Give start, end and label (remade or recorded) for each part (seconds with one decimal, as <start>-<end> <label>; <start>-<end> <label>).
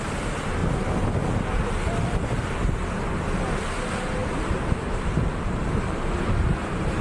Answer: 0.0-0.6 remade; 0.6-3.5 recorded; 3.5-7.0 remade